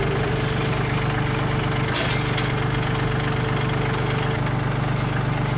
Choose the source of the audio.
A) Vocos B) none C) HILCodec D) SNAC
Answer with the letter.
B